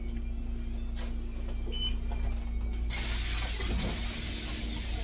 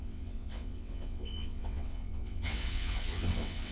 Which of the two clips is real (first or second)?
first